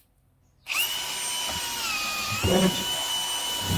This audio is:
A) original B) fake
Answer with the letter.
A